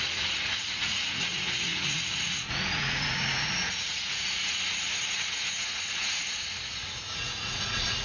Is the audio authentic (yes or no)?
no